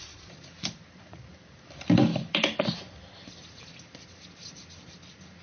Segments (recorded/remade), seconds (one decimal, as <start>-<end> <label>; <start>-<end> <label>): 0.0-5.4 recorded